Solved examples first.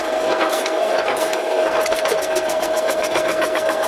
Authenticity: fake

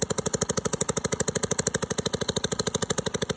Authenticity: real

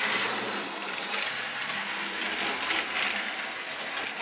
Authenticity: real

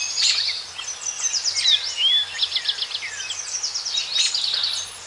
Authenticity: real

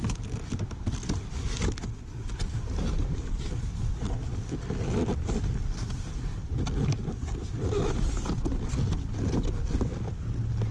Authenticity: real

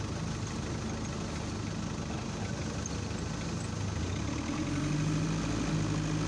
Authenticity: real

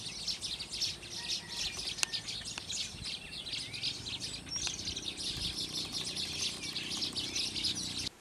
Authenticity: real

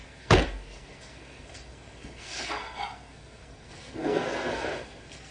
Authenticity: fake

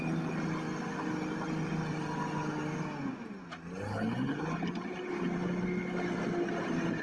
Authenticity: real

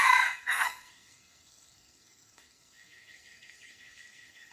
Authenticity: fake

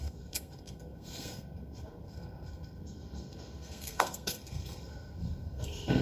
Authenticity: fake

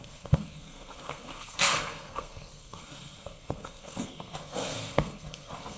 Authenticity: fake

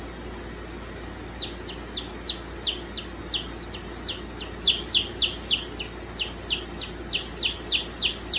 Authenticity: real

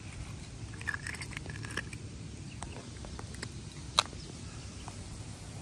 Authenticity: real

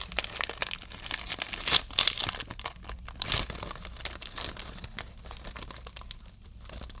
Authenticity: real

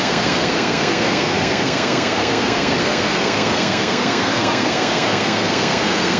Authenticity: fake